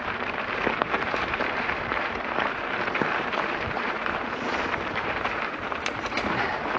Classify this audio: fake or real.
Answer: fake